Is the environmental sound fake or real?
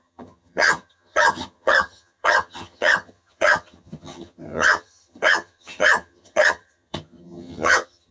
fake